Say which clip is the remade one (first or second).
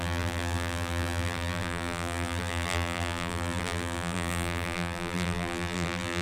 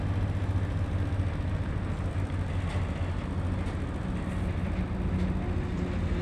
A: first